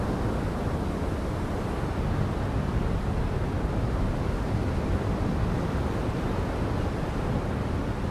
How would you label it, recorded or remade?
recorded